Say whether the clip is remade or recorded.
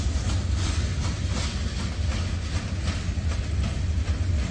recorded